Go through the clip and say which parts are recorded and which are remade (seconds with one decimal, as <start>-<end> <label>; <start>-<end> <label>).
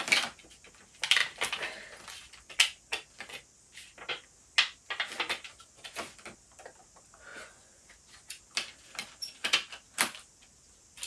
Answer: 0.0-7.3 recorded; 7.3-7.9 remade; 7.9-11.1 recorded